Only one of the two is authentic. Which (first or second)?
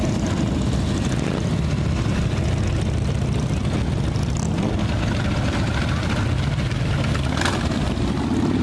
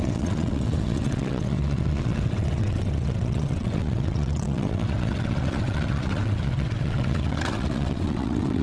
first